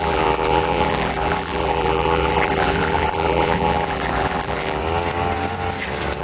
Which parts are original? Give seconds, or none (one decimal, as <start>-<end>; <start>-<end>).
4.8-6.2